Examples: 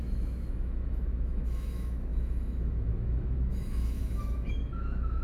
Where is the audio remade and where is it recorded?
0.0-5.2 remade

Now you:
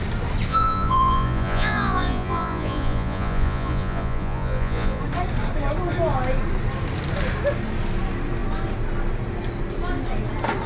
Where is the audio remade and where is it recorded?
0.0-0.5 recorded; 0.5-5.0 remade; 5.0-10.7 recorded